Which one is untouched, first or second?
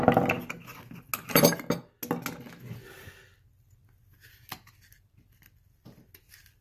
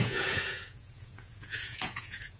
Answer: first